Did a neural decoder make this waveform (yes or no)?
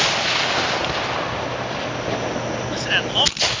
no